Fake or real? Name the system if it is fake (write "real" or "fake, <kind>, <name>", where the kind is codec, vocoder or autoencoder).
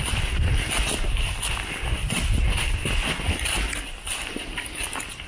real